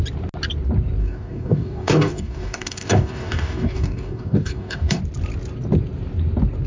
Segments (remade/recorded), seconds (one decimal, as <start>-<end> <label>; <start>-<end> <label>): 0.0-1.0 recorded; 1.0-5.0 remade; 5.0-6.7 recorded